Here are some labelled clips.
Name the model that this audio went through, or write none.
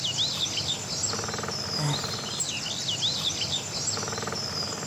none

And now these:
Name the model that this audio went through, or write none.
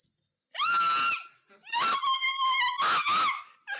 none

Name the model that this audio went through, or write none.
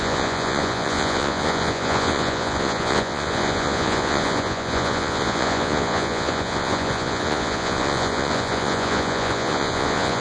vocoder, Vocos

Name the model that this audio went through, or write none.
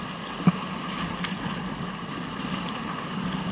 none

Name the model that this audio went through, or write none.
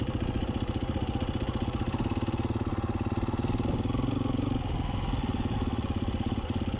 none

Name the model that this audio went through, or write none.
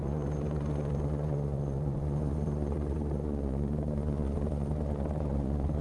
vocoder, Vocos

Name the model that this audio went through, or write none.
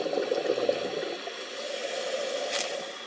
none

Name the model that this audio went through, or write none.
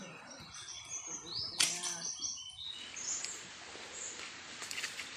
none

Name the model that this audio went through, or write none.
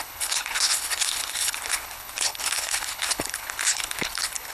codec, HILCodec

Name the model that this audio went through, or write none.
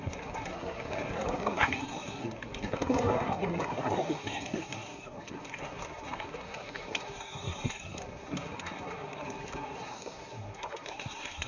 codec, SNAC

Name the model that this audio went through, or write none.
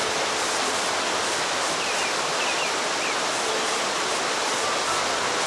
none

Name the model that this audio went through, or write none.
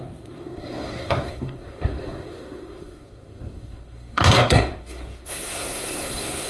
codec, SNAC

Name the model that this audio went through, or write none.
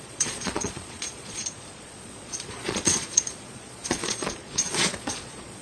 vocoder, Vocos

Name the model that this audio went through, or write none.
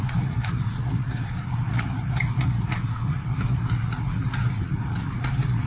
vocoder, Vocos